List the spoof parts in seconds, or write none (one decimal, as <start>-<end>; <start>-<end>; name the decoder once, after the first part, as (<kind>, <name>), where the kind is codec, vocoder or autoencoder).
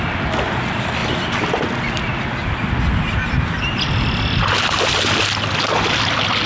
none